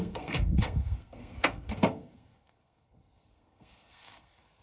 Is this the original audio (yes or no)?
no